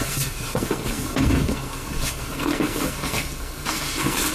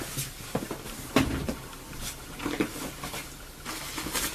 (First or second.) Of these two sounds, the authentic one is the second